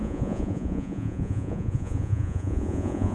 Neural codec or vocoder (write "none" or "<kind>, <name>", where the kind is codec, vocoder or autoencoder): vocoder, Vocos